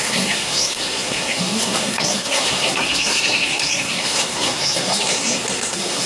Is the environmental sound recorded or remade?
remade